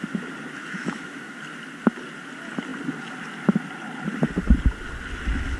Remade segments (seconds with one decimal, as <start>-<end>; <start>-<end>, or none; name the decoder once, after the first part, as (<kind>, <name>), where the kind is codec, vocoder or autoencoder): 0.6-1.4 (autoencoder, DAC-VAE)